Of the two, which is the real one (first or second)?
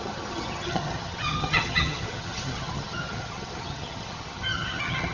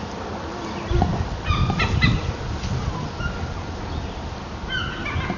second